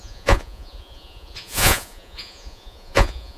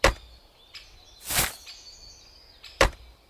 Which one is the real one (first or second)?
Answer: second